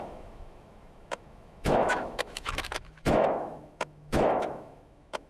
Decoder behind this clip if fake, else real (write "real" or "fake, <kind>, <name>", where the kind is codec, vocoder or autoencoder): fake, autoencoder, DAC-VAE